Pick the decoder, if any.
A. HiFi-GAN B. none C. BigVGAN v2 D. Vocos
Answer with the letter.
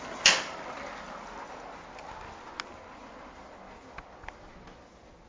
B